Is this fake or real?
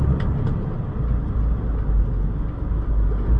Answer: real